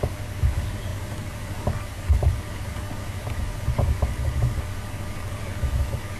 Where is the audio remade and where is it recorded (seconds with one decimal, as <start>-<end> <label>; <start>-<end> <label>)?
0.0-6.2 remade